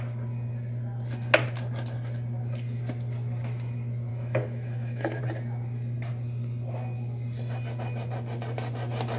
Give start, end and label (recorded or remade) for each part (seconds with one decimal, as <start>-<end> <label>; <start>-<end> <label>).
0.0-4.1 recorded; 4.1-5.2 remade; 5.2-9.2 recorded